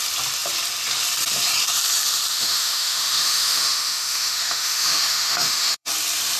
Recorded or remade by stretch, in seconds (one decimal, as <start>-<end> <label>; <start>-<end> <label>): 0.0-2.3 recorded; 2.3-5.9 remade; 5.9-6.4 recorded